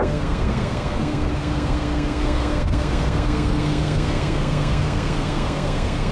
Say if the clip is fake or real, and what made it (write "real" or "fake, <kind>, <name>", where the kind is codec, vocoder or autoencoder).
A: fake, codec, SNAC